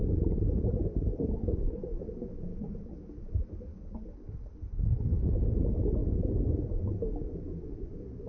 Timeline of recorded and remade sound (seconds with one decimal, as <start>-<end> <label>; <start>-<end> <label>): 0.0-1.1 recorded; 1.1-1.8 remade; 1.8-2.5 recorded; 2.5-3.0 remade; 3.0-3.7 recorded; 3.7-5.6 remade; 5.6-8.3 recorded